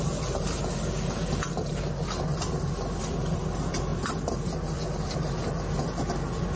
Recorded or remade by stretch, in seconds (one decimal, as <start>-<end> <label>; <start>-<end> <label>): 0.0-6.6 recorded